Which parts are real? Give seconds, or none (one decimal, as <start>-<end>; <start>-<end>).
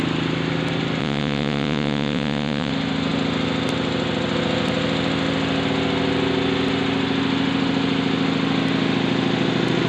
0.0-1.0; 2.7-9.9